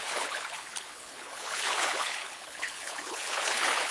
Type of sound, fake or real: fake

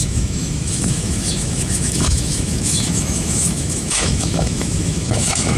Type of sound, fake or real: fake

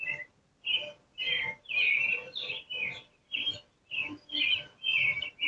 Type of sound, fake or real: real